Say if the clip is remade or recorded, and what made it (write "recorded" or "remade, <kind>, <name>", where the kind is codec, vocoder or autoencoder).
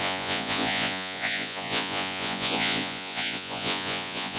remade, vocoder, Vocos